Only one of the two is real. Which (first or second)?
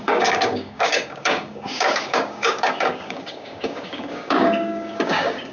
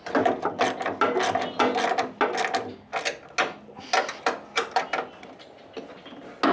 second